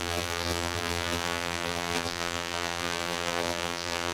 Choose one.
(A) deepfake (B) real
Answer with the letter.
A